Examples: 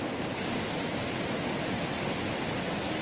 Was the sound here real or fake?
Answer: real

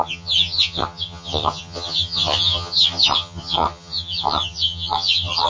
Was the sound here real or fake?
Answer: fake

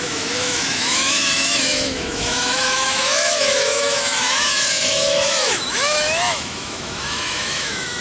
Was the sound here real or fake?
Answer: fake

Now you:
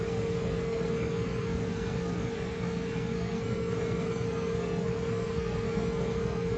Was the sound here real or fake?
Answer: fake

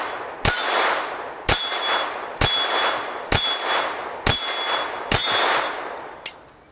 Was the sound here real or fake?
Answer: real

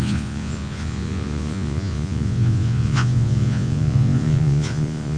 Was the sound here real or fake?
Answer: fake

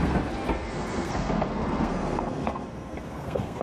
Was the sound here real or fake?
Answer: fake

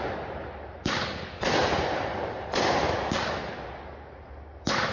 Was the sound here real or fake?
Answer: real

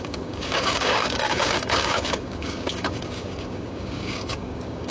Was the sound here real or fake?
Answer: fake